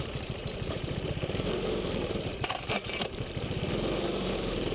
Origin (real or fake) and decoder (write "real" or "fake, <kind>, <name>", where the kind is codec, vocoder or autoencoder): fake, vocoder, BigVGAN v2